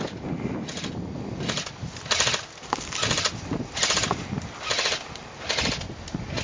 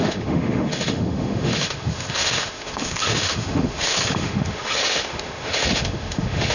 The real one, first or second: first